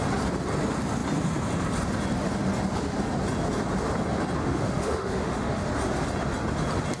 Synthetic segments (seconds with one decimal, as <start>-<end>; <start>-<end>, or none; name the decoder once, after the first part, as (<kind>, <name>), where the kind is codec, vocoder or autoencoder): 4.4-5.7 (autoencoder, DAC-VAE)

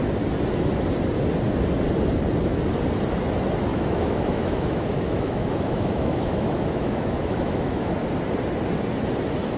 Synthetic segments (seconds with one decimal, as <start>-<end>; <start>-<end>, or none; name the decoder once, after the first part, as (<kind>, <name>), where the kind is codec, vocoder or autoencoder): 3.7-7.9 (autoencoder, DAC-VAE)